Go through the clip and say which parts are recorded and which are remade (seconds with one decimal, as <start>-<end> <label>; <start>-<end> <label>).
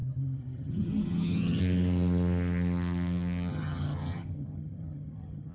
0.0-1.6 remade; 1.6-3.5 recorded; 3.5-5.5 remade